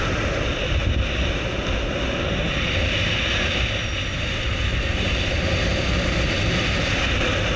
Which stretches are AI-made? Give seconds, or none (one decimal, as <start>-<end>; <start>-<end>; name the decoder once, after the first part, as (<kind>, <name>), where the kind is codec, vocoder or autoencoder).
none